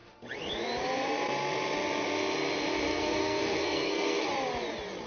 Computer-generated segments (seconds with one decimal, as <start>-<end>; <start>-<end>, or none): 2.9-4.3